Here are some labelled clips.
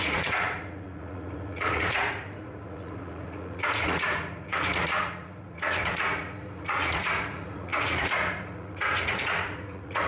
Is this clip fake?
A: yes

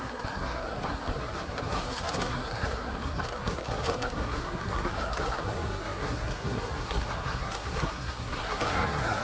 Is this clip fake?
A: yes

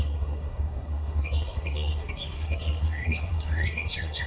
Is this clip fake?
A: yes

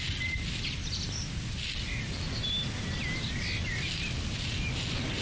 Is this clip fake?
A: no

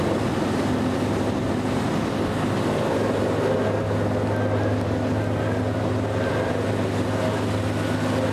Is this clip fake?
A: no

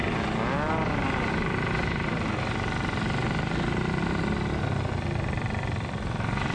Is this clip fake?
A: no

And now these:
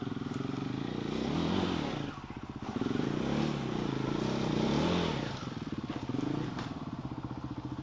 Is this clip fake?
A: no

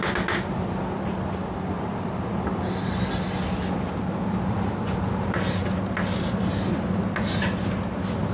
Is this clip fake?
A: no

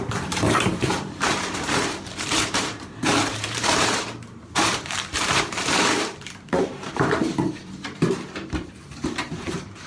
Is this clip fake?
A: yes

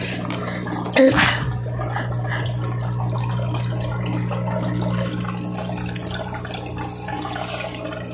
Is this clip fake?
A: no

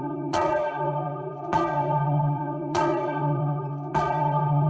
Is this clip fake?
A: yes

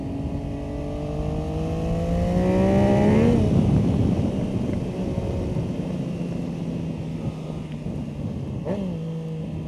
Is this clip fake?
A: no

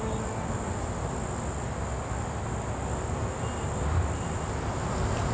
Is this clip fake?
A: no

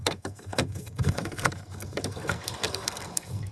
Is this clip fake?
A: yes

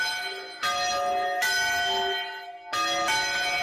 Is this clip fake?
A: no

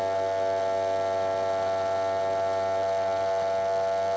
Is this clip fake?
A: no